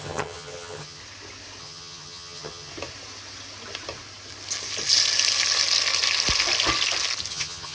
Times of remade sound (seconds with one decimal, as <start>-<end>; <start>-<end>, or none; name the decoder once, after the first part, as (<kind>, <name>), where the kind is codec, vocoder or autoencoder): 0.0-1.0 (vocoder, HiFi-GAN); 1.6-2.7; 7.3-7.7